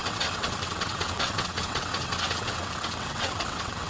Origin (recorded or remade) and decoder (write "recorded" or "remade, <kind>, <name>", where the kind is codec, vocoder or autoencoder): remade, vocoder, WaveNeXt